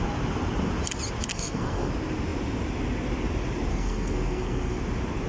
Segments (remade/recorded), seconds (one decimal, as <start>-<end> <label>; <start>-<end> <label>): 0.0-1.3 recorded; 1.3-1.9 remade; 1.9-3.7 recorded; 3.7-4.8 remade; 4.8-5.3 recorded